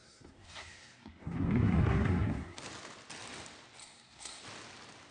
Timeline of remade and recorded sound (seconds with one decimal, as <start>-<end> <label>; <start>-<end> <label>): 0.0-2.6 remade; 2.6-3.8 recorded; 3.8-4.4 remade; 4.4-5.1 recorded